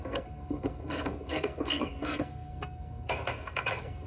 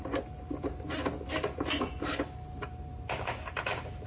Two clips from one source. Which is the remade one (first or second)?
first